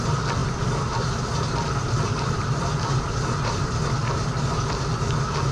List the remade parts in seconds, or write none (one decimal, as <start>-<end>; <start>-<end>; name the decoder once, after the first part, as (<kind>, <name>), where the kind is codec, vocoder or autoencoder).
0.4-3.7 (vocoder, BigVGAN v2)